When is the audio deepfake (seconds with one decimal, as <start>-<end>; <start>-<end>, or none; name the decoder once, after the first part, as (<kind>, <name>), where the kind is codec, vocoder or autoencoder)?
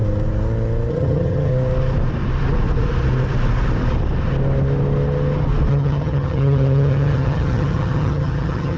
0.9-1.5 (vocoder, HiFi-GAN); 5.7-8.8